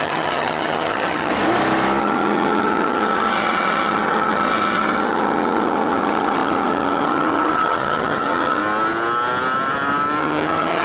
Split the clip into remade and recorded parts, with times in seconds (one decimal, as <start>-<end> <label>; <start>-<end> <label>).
0.0-1.3 remade; 1.3-2.0 recorded; 2.0-8.6 remade; 8.6-10.2 recorded; 10.2-10.8 remade